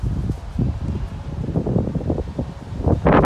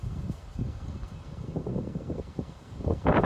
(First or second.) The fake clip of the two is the second